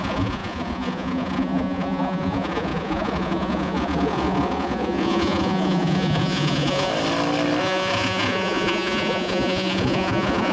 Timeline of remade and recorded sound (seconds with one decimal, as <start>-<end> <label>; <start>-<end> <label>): 0.0-6.9 remade; 6.9-7.6 recorded; 7.6-10.5 remade